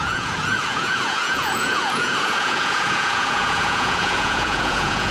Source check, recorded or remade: remade